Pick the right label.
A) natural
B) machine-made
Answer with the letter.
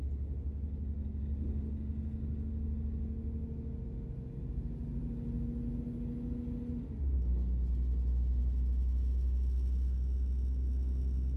A